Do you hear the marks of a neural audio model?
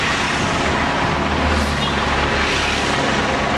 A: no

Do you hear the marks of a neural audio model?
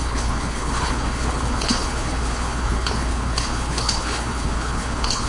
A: yes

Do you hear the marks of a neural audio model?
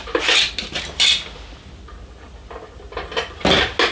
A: no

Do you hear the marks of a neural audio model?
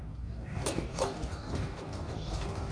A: yes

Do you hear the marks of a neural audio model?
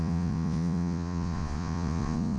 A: yes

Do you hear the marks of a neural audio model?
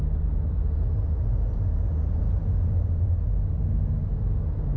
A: no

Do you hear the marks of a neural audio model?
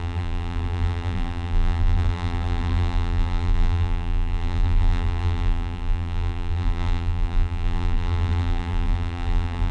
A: yes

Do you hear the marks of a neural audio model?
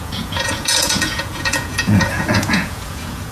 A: yes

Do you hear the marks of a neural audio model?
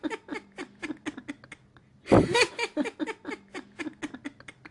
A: no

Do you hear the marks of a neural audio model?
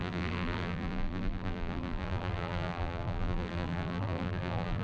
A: yes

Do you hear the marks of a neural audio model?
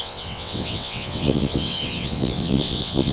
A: yes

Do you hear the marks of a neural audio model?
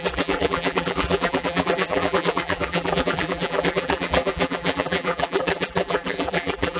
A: yes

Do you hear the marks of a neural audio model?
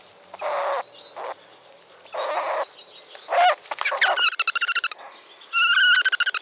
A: no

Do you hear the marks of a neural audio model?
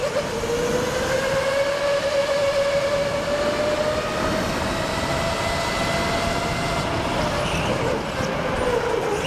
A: no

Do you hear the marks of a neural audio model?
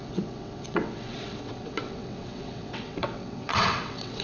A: yes